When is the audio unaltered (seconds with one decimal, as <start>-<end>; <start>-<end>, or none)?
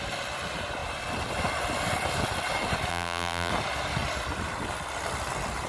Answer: 0.0-2.9; 3.5-5.7